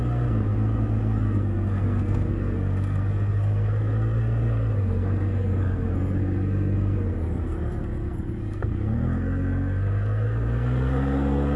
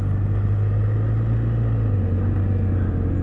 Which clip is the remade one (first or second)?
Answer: first